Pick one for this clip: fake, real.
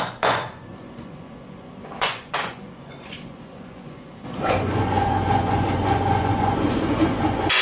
fake